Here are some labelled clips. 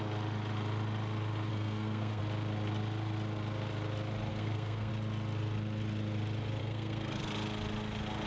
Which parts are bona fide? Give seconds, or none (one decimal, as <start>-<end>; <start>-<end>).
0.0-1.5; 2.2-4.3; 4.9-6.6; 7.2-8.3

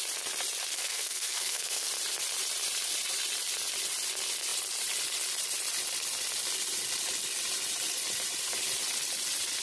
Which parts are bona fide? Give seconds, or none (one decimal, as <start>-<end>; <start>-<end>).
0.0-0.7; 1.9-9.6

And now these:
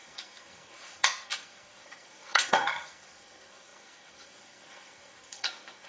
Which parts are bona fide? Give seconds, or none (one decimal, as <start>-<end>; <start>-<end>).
none